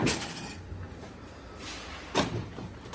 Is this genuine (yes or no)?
yes